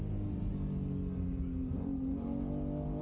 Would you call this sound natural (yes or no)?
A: yes